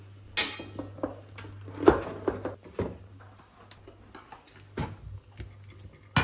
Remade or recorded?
recorded